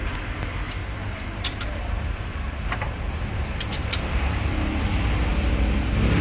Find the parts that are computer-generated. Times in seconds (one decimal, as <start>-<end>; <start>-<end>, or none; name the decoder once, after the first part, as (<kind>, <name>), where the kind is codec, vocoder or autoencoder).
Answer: 0.8-4.5 (vocoder, BigVGAN v2)